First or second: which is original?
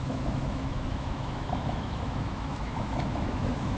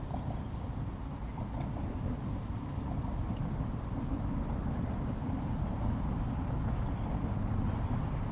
second